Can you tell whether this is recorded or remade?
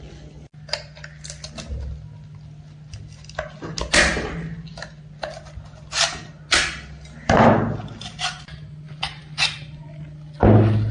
recorded